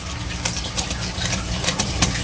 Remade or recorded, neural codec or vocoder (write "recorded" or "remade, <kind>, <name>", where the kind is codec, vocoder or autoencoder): remade, vocoder, BigVGAN v2